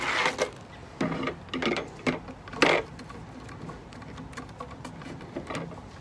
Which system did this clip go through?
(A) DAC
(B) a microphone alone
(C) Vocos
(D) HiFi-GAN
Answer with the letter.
B